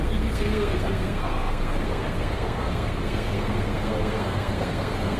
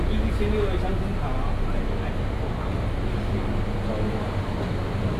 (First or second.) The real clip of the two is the second